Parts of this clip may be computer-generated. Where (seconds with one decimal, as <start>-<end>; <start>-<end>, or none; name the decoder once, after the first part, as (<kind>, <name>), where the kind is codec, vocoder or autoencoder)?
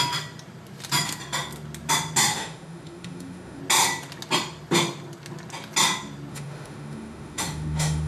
2.3-3.6 (autoencoder, DAC-VAE); 6.3-8.1